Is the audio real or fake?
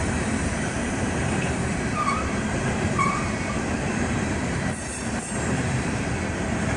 fake